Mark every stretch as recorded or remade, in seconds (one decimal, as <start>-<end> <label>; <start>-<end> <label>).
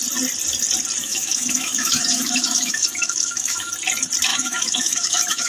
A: 0.0-1.0 recorded; 1.0-3.7 remade; 3.7-4.3 recorded; 4.3-5.5 remade